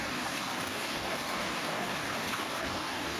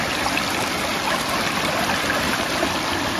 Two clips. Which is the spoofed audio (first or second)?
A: first